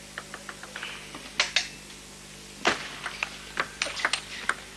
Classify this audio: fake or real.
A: real